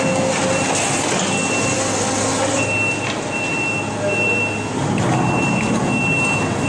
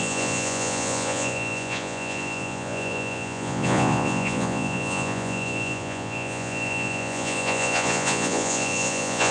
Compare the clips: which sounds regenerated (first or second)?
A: second